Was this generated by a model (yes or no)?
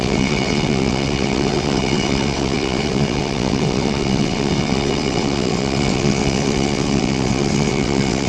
yes